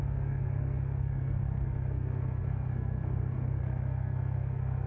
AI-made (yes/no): yes